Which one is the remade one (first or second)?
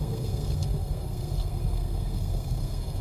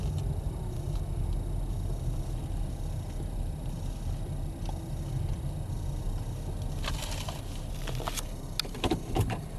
first